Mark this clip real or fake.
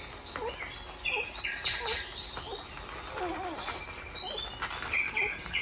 real